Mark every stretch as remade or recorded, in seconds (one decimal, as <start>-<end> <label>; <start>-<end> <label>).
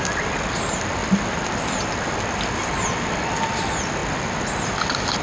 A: 0.0-5.2 recorded